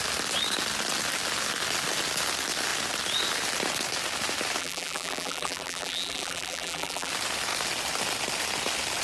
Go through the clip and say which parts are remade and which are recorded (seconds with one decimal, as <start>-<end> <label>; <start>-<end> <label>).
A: 0.0-4.6 recorded; 4.6-7.1 remade; 7.1-9.0 recorded